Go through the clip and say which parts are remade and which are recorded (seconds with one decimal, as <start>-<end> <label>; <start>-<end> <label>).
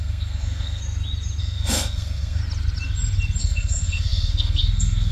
0.0-0.8 remade; 0.8-1.4 recorded; 1.4-2.4 remade; 2.4-3.4 recorded; 3.4-5.1 remade